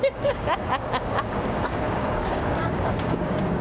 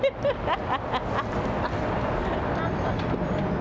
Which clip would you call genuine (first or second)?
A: second